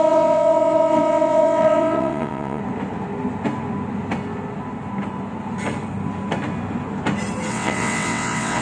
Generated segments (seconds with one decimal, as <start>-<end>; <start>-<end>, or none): 0.0-2.6; 7.5-8.6